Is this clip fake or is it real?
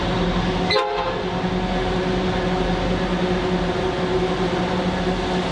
real